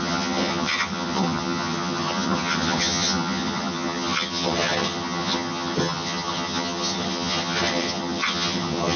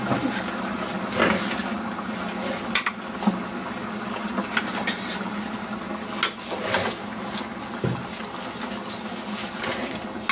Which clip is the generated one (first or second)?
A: first